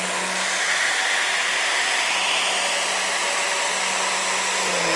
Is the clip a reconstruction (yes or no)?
no